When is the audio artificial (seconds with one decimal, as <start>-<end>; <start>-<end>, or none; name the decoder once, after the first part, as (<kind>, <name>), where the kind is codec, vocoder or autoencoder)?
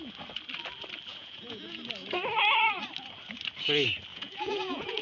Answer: 1.1-1.8 (vocoder, Vocos); 4.1-5.0